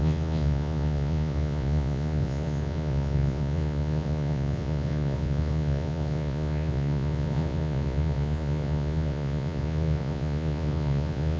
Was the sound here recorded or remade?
remade